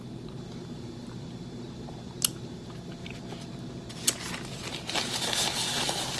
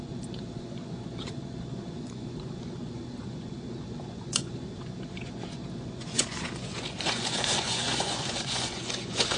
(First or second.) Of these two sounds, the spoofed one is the second